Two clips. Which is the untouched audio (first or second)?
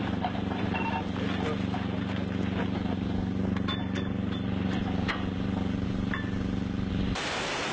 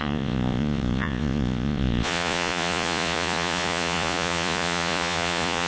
first